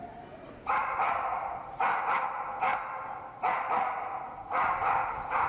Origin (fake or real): real